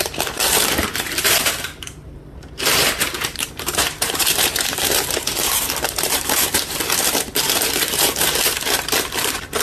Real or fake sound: fake